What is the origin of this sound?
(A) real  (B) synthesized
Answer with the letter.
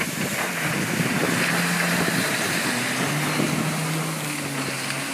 A